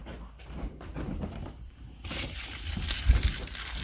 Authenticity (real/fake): fake